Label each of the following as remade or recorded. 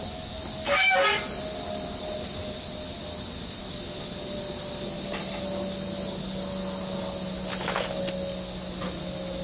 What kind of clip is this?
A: recorded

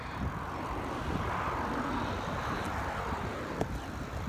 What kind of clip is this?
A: recorded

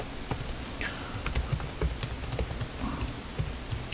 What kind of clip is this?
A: recorded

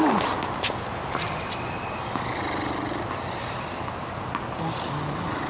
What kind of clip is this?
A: recorded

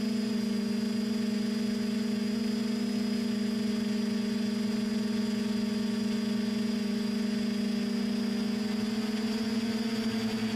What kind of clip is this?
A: recorded